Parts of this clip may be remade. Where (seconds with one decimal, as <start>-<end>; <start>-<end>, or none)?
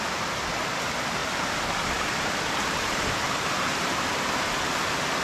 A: 1.2-4.3